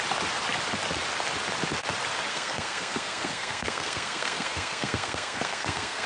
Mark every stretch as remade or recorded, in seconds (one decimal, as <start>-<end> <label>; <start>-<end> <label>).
0.0-2.3 recorded; 2.3-6.1 remade